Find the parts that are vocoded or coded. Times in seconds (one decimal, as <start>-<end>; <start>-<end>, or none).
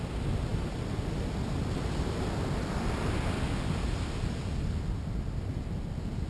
none